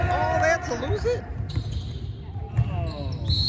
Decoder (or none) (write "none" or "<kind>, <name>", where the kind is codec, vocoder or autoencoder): none